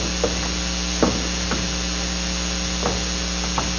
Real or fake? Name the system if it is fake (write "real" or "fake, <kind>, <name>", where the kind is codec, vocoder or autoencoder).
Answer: real